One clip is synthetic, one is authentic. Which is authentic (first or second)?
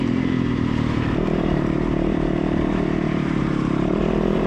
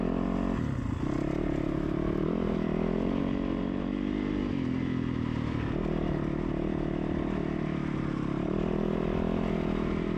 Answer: second